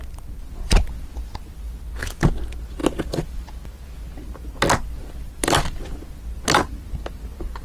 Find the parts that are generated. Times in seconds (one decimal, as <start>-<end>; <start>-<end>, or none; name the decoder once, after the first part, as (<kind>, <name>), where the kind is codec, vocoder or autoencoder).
2.8-3.5 (vocoder, BigVGAN v2); 5.0-6.2